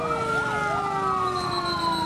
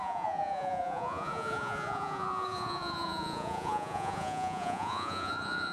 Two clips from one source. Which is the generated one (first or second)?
second